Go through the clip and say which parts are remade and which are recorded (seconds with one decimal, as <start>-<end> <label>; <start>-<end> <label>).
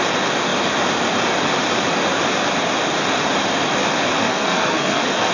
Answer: 0.0-4.2 recorded; 4.2-5.3 remade